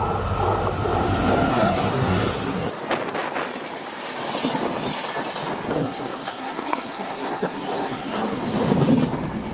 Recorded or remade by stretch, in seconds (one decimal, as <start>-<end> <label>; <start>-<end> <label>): 0.0-1.5 recorded; 1.5-2.7 remade; 2.7-5.7 recorded; 5.7-8.4 remade; 8.4-9.5 recorded

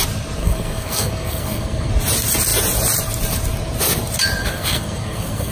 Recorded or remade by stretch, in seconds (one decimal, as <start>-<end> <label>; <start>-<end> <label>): 0.0-0.4 recorded; 0.4-1.9 remade; 1.9-4.4 recorded; 4.4-5.5 remade

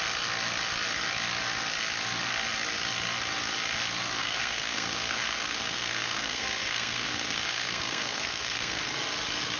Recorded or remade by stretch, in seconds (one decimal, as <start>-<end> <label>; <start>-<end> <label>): 0.0-4.2 recorded; 4.2-8.8 remade; 8.8-9.6 recorded

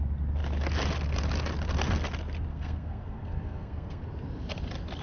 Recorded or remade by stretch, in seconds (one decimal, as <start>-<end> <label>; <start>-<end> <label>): 0.0-2.5 recorded; 2.5-4.0 remade; 4.0-5.0 recorded

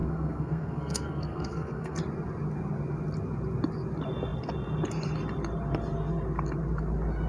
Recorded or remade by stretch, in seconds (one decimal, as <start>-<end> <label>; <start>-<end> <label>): 0.0-2.0 remade; 2.0-7.3 recorded

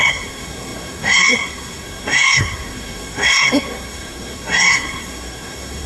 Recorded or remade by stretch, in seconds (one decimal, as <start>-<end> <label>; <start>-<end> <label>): 0.0-5.9 remade